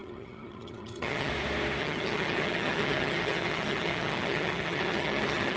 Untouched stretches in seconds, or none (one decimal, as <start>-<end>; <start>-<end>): 1.3-1.8